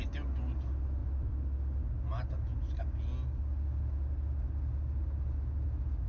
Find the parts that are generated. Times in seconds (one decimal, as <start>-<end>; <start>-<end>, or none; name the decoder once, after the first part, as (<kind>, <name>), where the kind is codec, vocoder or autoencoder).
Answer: none